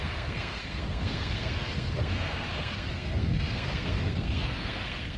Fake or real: fake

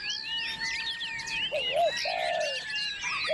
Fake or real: real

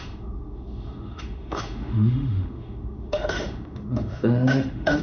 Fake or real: fake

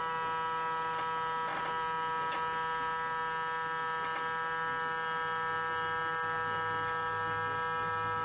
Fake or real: real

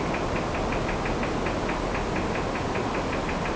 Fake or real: real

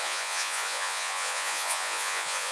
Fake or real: fake